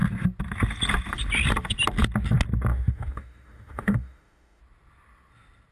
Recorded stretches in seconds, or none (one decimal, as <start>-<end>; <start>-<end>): 0.0-2.7; 4.6-5.7